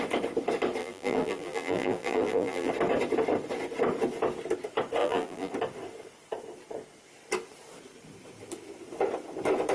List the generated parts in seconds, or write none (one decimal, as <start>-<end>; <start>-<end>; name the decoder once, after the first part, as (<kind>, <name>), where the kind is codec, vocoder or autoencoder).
0.8-2.7 (vocoder, BigVGAN v2); 5.0-5.5